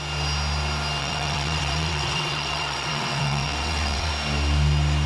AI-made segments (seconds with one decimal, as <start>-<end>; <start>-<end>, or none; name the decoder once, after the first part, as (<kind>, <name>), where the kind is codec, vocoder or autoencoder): 1.0-4.1 (vocoder, WaveNeXt)